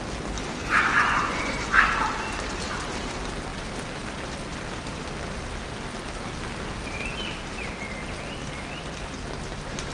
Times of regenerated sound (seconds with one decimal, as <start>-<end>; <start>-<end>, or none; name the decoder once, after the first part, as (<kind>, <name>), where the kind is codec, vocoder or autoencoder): 0.6-1.9 (vocoder, Vocos)